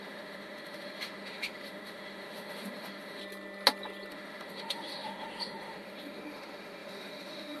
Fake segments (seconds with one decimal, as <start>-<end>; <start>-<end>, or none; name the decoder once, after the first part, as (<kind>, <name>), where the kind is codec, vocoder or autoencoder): 0.0-3.2 (autoencoder, DAC-VAE); 4.1-7.6